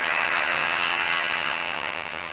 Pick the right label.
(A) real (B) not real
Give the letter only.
B